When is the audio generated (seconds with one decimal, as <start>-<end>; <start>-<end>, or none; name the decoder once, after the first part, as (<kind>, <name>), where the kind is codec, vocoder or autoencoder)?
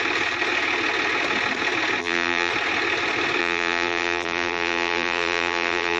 2.0-2.5 (vocoder, BigVGAN v2); 3.4-6.0